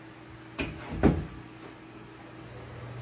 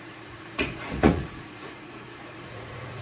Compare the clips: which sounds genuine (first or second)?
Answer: first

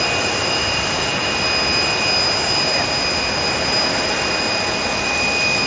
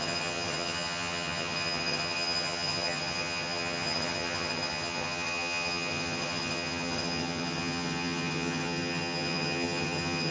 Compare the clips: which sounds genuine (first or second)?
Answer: first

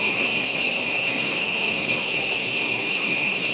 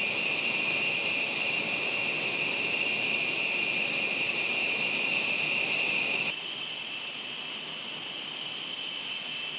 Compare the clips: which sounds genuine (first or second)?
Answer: second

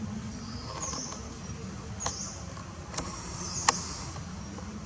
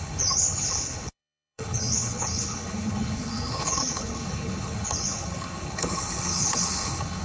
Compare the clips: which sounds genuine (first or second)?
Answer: first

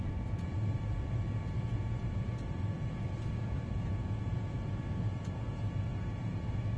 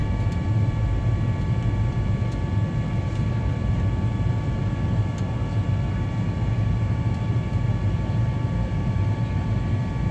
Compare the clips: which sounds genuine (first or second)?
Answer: second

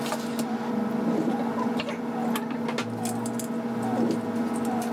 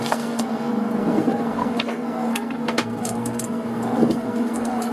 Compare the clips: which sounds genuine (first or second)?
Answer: first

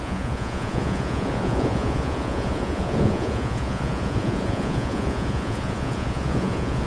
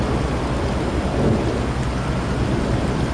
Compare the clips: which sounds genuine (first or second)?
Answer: second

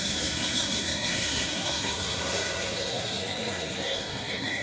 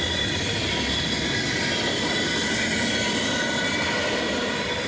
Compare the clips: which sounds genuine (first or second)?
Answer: second